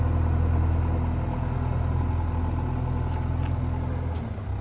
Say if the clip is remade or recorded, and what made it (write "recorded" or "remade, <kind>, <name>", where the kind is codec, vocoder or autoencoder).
recorded